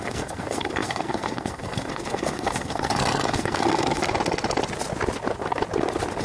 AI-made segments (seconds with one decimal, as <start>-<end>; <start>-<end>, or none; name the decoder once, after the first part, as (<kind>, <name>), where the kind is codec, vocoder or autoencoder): 0.0-4.0 (codec, SNAC)